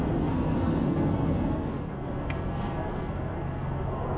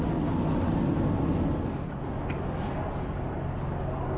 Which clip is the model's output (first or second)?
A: first